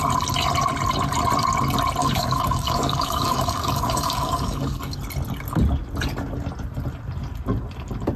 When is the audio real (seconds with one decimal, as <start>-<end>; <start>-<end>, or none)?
0.0-2.0; 5.0-8.2